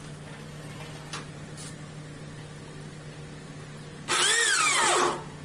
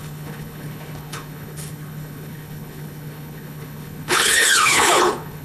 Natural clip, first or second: first